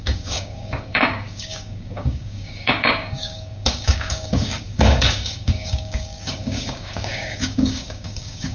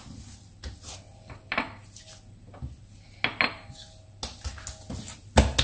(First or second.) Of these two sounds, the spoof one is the first